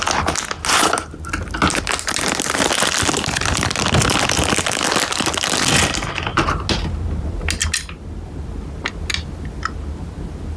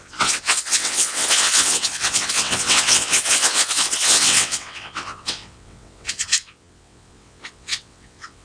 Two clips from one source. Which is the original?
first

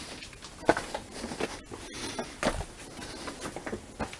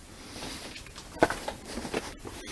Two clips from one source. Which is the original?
first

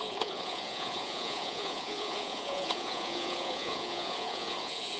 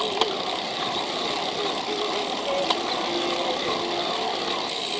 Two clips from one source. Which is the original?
second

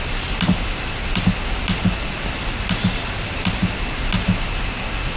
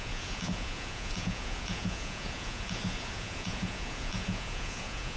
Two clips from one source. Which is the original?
first